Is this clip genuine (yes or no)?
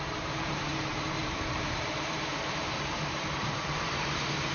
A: no